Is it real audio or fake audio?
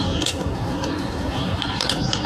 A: fake